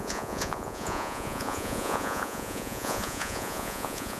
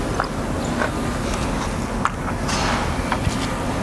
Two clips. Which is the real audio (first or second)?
second